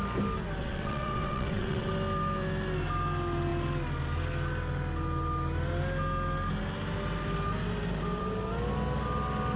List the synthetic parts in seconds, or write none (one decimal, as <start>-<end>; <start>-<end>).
0.6-1.9